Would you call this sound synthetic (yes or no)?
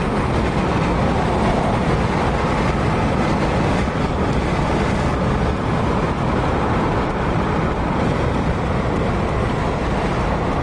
no